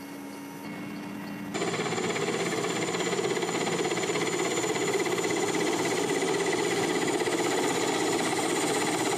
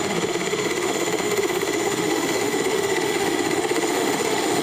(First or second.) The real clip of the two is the first